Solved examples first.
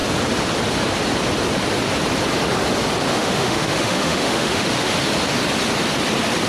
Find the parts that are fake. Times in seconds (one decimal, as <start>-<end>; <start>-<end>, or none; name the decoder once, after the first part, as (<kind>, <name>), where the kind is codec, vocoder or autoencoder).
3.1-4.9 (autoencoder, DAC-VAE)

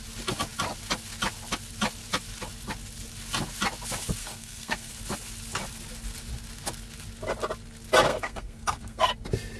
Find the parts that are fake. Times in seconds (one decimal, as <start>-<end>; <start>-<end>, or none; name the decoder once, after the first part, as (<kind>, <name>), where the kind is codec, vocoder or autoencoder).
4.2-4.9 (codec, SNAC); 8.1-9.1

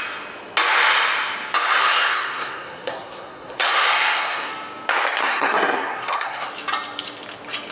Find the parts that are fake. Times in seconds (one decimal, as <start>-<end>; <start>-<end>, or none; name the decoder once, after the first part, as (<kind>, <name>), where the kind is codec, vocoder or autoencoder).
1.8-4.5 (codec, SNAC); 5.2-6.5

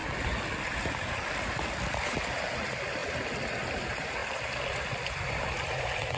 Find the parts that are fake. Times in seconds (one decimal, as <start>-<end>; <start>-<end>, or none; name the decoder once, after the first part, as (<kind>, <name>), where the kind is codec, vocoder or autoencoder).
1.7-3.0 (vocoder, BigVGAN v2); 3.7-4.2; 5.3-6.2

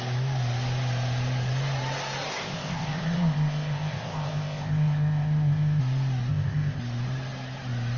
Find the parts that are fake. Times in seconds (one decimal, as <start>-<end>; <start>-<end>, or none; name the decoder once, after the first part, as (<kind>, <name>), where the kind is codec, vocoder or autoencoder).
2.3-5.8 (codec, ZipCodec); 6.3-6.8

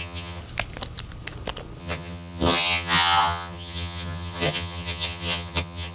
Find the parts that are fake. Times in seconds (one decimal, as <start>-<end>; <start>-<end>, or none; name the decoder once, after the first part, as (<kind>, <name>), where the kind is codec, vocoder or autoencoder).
0.0-0.4 (vocoder, HiFi-GAN); 1.8-5.9